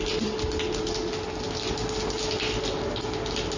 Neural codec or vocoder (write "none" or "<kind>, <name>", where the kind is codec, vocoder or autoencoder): none